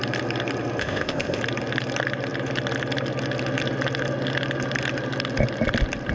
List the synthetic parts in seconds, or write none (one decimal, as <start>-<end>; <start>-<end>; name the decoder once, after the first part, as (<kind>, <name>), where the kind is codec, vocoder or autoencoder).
0.8-1.4 (codec, ZipCodec)